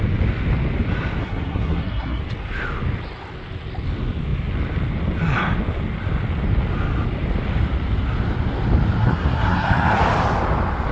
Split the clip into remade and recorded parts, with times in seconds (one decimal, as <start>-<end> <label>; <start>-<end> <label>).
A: 0.0-1.2 recorded; 1.2-2.2 remade; 2.2-9.0 recorded; 9.0-10.0 remade; 10.0-10.9 recorded